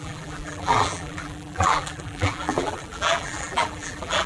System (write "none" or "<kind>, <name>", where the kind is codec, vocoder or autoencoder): vocoder, BigVGAN v2